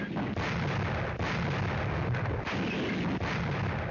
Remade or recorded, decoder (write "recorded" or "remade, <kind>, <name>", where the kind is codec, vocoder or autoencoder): recorded